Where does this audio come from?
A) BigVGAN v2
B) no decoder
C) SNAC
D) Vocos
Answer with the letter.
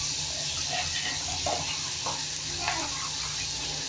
B